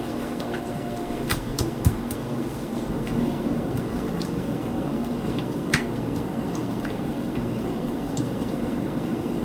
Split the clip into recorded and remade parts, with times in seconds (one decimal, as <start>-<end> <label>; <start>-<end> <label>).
0.0-9.4 remade